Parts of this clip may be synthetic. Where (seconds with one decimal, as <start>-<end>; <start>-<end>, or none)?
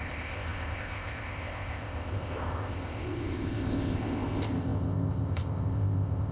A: 0.0-6.3